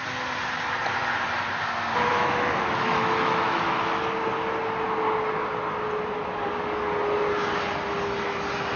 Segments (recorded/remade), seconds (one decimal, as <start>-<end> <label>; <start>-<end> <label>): 0.0-2.1 recorded; 2.1-4.0 remade; 4.0-8.8 recorded

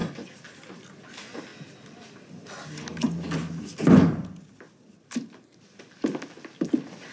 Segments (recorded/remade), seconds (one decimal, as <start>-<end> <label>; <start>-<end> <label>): 0.0-7.1 recorded

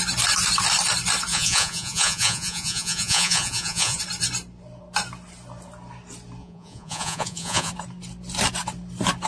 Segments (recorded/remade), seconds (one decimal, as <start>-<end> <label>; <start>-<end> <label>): 0.0-1.3 recorded; 1.3-4.0 remade; 4.0-6.4 recorded; 6.4-7.7 remade; 7.7-9.3 recorded

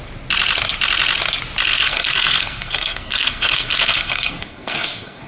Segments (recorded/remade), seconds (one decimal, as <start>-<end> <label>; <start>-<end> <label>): 0.0-1.7 recorded; 1.7-5.3 remade

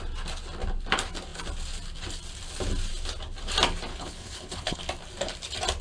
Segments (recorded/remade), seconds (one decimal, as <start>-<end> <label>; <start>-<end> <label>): 0.0-3.9 recorded; 3.9-4.8 remade; 4.8-5.8 recorded